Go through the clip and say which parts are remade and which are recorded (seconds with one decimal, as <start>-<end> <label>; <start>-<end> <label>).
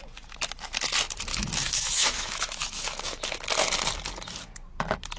0.0-1.3 recorded; 1.3-3.3 remade; 3.3-5.2 recorded